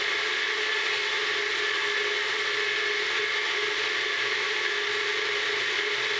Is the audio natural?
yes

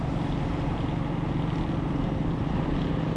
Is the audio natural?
yes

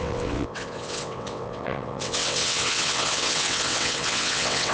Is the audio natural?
no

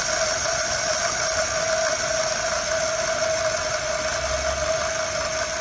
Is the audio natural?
yes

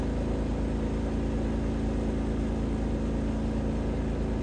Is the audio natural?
yes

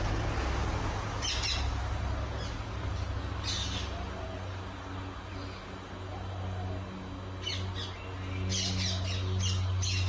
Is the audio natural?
yes